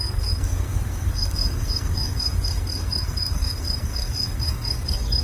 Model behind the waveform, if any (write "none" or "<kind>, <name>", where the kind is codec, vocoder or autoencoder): codec, SNAC